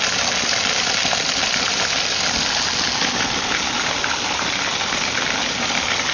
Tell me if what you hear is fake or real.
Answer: real